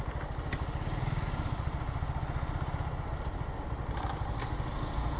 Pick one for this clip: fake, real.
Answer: real